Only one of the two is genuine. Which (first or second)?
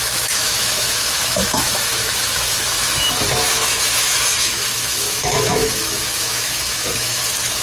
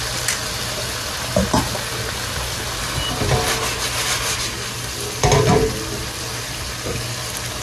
second